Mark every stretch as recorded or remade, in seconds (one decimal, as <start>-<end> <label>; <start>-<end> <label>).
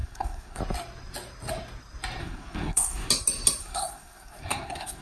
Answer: 0.0-0.6 remade; 0.6-2.2 recorded; 2.2-3.1 remade; 3.1-3.6 recorded; 3.6-5.0 remade